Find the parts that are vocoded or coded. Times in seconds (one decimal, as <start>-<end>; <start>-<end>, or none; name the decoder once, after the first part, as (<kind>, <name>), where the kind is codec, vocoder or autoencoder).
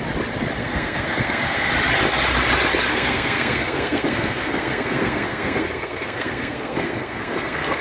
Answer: 0.6-1.7 (codec, SNAC); 2.9-7.8